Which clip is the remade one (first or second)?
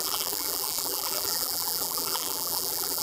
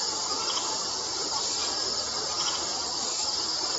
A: first